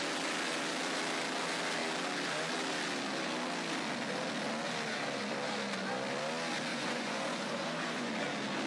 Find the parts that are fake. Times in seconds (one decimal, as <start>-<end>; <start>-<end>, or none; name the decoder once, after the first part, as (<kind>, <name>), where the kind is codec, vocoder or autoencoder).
6.7-8.1 (vocoder, Vocos)